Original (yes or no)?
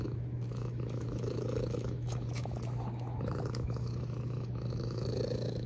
no